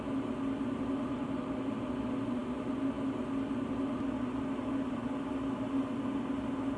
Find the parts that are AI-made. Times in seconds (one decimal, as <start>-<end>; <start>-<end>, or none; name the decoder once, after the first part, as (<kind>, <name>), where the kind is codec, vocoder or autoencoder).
none